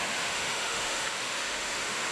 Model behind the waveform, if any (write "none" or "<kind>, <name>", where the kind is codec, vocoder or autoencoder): autoencoder, DAC-VAE